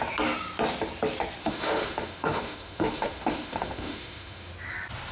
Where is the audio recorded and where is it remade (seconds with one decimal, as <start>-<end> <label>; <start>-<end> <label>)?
0.0-1.4 recorded; 1.4-4.5 remade; 4.5-5.1 recorded